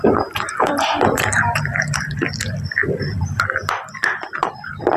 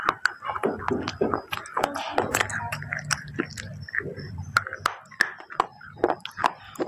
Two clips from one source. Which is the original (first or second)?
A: second